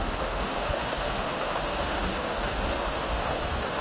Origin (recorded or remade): remade